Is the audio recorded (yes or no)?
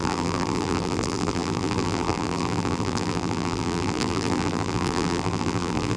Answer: no